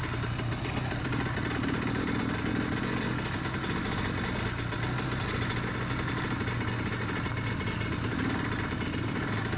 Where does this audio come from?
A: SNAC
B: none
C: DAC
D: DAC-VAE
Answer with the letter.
B